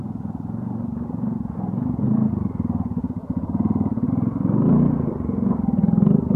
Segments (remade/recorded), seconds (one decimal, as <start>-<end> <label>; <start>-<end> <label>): 0.0-2.3 remade; 2.3-3.0 recorded; 3.0-4.1 remade; 4.1-6.4 recorded